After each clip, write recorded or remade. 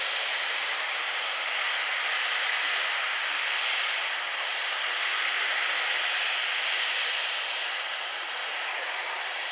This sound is remade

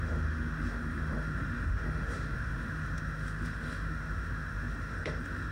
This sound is remade